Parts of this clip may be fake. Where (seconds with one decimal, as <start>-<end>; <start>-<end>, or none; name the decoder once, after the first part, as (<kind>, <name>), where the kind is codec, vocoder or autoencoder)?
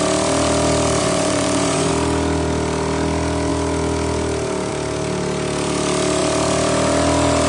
1.0-1.9 (vocoder, Vocos)